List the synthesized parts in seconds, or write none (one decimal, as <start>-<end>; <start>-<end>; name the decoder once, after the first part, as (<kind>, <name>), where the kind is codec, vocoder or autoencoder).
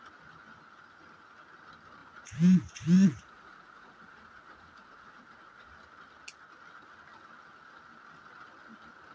2.0-5.7 (vocoder, Vocos)